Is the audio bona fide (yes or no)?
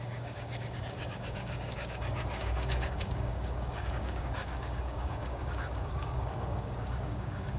no